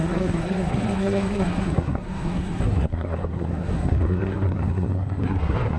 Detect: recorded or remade remade